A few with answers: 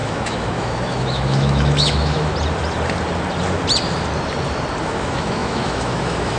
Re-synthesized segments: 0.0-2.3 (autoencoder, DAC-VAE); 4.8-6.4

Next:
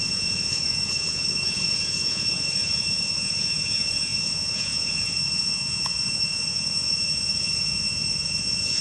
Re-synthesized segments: 0.0-8.8 (vocoder, Vocos)